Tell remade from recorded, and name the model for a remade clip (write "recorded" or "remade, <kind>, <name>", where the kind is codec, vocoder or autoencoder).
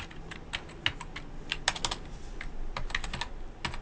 recorded